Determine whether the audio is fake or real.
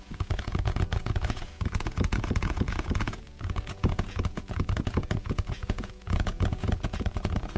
fake